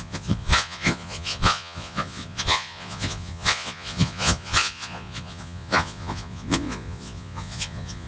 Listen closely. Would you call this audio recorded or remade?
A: remade